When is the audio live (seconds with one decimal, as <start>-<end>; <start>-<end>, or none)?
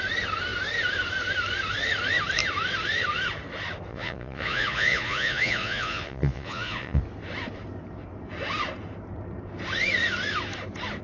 0.0-3.9; 7.0-11.0